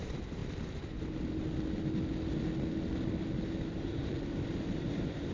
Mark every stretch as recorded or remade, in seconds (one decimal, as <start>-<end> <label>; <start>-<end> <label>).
0.0-0.4 remade; 0.4-3.6 recorded; 3.6-4.0 remade; 4.0-4.7 recorded; 4.7-5.3 remade